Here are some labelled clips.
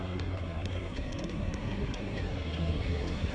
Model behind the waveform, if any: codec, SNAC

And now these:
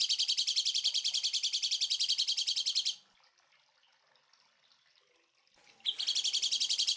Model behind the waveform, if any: none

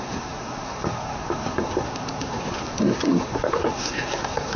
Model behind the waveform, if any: codec, SNAC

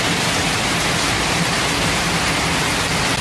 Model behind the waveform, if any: none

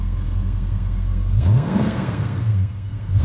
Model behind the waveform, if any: codec, SNAC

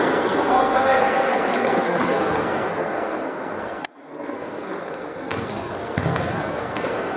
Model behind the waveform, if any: codec, SNAC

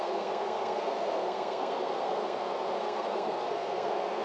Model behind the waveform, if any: codec, SNAC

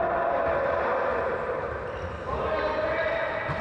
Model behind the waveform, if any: none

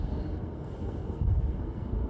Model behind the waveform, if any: codec, SNAC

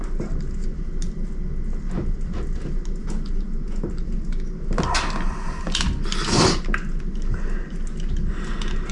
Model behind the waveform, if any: none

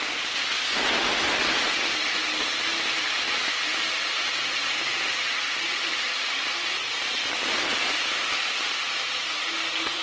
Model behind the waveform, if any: none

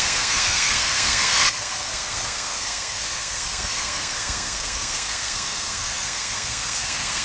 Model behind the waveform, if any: codec, SNAC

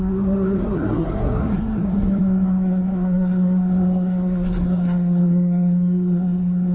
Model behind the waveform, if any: codec, SNAC